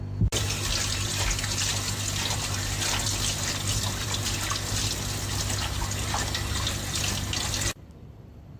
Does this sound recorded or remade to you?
recorded